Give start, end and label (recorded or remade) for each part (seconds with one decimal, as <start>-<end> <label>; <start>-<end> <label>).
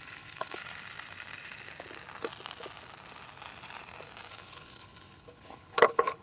0.0-0.6 remade; 0.6-4.3 recorded; 4.3-6.2 remade